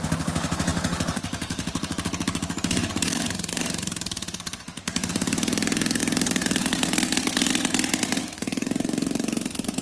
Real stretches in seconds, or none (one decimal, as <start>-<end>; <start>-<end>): 7.5-8.2